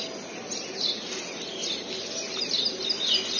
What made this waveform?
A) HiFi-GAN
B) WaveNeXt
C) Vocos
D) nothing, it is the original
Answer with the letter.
D